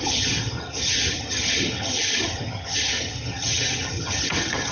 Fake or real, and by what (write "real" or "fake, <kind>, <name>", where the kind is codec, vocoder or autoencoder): fake, vocoder, HiFi-GAN